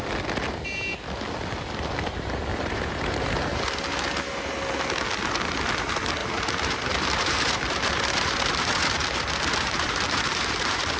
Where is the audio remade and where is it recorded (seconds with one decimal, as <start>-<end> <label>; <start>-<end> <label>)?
0.0-2.5 recorded; 2.5-3.6 remade; 3.6-6.2 recorded; 6.2-11.0 remade

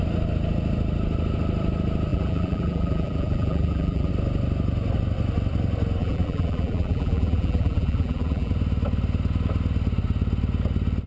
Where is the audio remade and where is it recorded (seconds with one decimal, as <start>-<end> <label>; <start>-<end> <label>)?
0.0-2.1 recorded; 2.1-4.1 remade; 4.1-6.0 recorded; 6.0-8.5 remade; 8.5-11.1 recorded

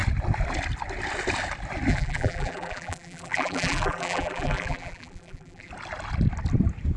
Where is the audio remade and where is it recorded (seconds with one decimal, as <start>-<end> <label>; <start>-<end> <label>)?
0.0-1.9 recorded; 1.9-5.7 remade; 5.7-7.0 recorded